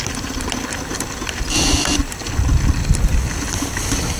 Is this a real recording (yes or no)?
yes